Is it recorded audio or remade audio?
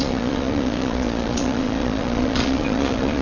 remade